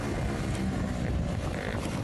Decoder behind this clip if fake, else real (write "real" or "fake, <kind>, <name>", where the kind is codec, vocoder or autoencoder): fake, vocoder, BigVGAN v2